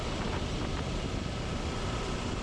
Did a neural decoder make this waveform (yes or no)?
no